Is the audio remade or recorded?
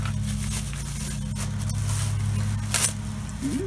recorded